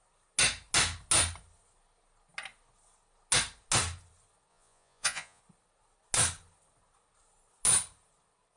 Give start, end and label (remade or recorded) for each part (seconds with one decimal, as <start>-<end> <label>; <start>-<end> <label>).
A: 0.0-4.5 recorded; 4.5-5.4 remade; 5.4-8.6 recorded